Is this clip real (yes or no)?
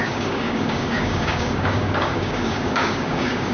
no